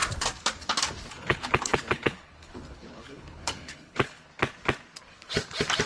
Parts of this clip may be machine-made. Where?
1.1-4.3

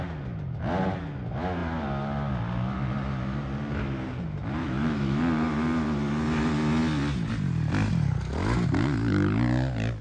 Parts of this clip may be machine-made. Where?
4.6-5.2

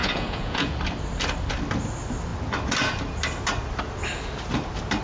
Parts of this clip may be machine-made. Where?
0.0-0.8

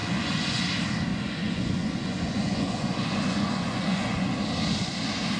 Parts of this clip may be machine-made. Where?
0.0-0.6; 1.1-4.3

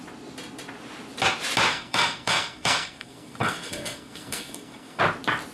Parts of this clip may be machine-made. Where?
1.7-5.0

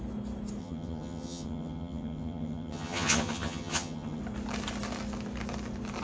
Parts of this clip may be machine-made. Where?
0.6-4.2

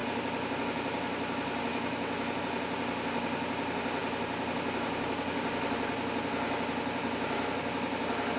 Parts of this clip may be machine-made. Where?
1.7-2.4